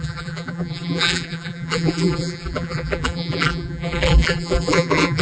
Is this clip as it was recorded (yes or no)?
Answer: no